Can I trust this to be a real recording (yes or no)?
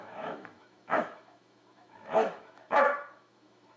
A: no